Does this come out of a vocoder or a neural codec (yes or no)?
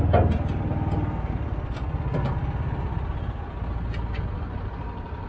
no